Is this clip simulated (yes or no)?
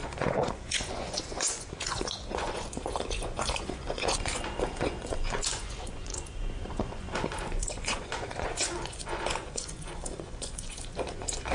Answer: yes